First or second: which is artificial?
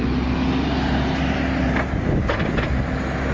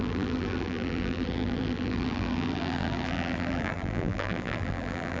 second